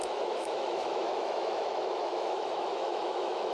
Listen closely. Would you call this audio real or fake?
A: fake